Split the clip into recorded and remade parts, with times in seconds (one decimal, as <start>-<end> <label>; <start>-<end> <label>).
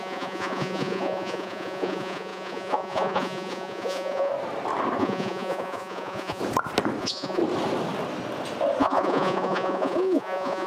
0.0-4.3 remade; 4.3-5.0 recorded; 5.0-6.4 remade; 6.4-7.0 recorded; 7.0-7.4 remade; 7.4-8.8 recorded; 8.8-10.7 remade